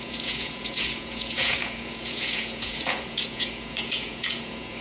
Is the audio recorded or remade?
remade